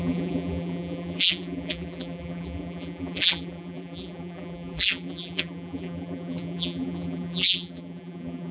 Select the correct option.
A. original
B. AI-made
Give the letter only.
B